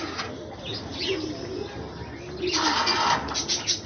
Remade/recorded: recorded